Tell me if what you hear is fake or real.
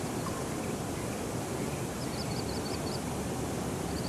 fake